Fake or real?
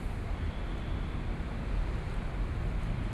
fake